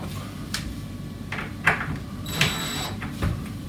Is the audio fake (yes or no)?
yes